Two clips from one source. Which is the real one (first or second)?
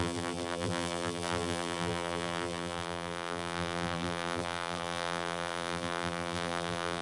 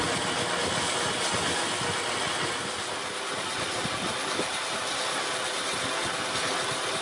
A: second